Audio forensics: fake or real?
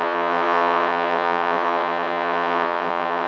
fake